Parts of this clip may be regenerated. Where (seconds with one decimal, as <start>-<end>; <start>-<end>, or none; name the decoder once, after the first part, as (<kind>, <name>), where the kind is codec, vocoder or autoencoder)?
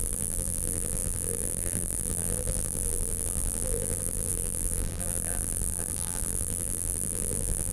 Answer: 0.0-7.7 (vocoder, BigVGAN v2)